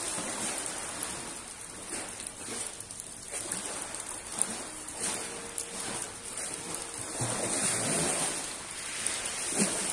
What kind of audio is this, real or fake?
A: real